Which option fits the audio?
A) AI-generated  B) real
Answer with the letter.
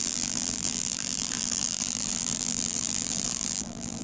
A